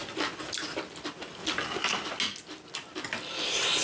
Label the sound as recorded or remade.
recorded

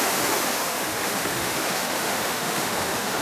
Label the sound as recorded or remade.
remade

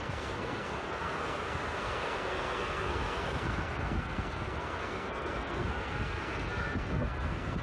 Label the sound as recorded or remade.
remade